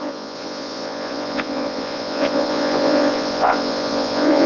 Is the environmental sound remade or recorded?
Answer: remade